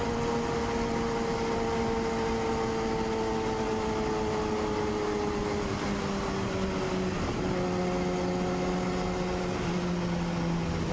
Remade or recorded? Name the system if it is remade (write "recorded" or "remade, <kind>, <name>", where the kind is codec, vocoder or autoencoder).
recorded